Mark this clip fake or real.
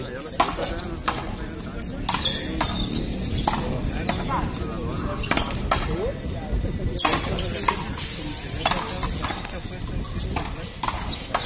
real